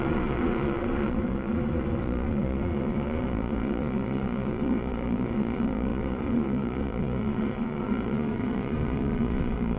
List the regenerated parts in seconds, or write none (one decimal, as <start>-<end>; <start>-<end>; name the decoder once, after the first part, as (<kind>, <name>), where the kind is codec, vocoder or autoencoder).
0.0-9.8 (vocoder, Vocos)